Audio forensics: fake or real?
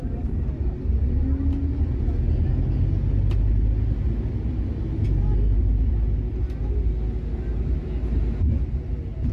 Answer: real